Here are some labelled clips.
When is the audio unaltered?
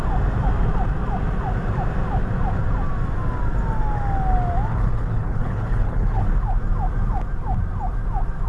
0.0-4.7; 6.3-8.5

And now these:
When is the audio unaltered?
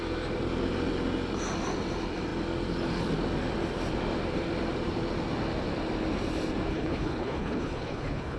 0.0-6.7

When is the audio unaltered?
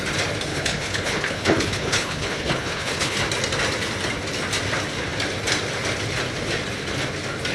0.0-0.5; 3.2-7.5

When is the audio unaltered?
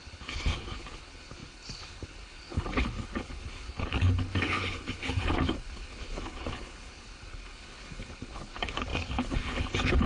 none